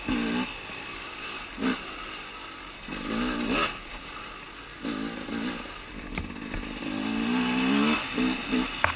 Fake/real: real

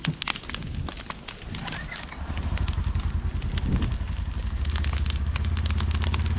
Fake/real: real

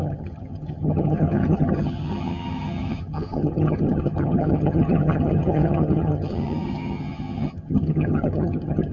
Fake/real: fake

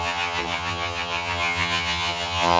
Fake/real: fake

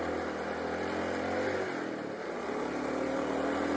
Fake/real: real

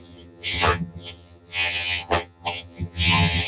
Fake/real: fake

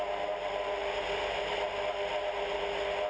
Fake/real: real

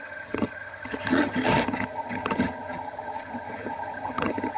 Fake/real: fake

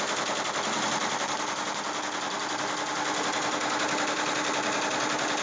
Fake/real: real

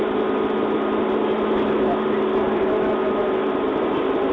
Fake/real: real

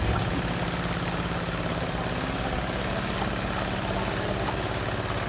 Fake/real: real